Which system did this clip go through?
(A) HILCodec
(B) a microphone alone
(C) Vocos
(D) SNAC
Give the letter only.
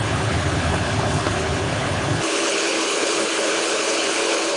A